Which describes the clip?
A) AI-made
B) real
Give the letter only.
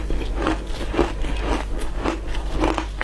B